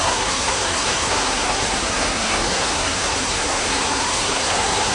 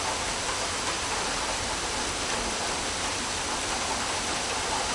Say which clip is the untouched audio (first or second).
second